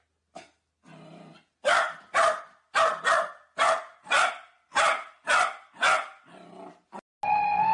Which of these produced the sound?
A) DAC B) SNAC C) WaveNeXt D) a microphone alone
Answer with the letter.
D